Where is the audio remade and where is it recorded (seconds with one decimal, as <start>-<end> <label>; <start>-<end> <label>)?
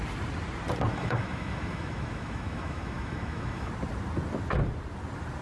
0.0-0.9 recorded; 0.9-3.7 remade; 3.7-5.4 recorded